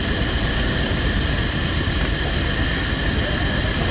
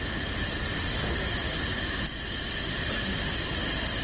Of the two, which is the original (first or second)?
second